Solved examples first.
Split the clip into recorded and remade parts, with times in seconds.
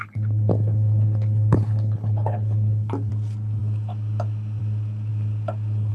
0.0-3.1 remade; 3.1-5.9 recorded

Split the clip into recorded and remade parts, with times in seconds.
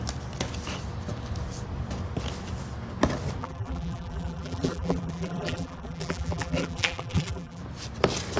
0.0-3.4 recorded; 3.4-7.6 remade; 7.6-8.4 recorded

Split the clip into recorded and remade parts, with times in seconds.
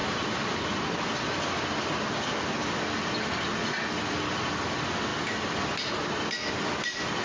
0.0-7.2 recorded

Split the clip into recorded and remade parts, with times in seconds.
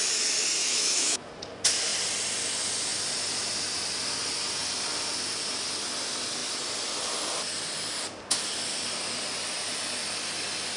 0.0-0.6 recorded; 0.6-1.3 remade; 1.3-10.8 recorded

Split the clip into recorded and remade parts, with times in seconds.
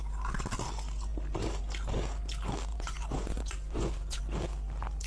0.0-2.7 recorded; 2.7-4.2 remade; 4.2-5.1 recorded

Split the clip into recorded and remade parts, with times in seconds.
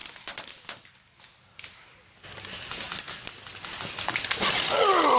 0.0-5.2 recorded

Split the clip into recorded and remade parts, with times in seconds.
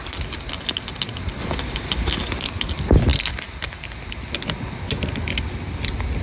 0.0-6.2 recorded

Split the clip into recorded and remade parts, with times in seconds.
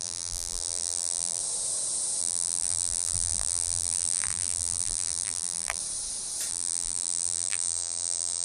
0.0-1.4 remade; 1.4-2.2 recorded; 2.2-5.8 remade; 5.8-6.5 recorded; 6.5-8.4 remade